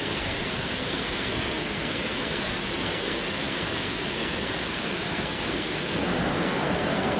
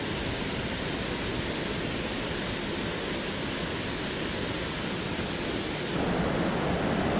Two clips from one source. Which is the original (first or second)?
second